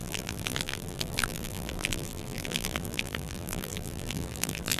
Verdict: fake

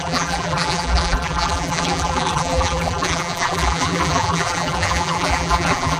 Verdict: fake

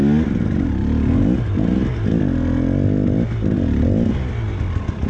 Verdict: real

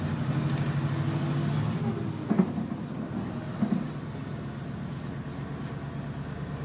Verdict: real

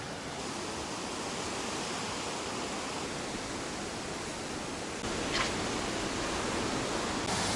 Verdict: real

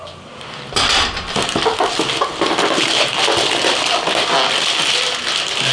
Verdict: real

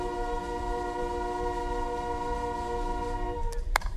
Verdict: fake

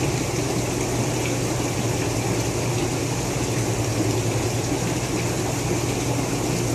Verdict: real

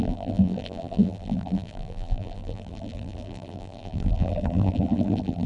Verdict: fake